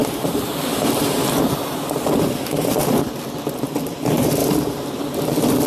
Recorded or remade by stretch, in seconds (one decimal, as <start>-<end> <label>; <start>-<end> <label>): 0.0-3.1 remade; 3.1-4.4 recorded; 4.4-5.0 remade; 5.0-5.7 recorded